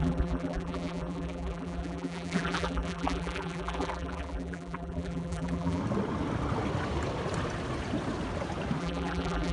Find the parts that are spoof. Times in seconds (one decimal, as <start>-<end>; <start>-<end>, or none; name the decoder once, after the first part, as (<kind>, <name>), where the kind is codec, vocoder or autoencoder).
0.0-5.8 (vocoder, BigVGAN v2); 8.8-9.5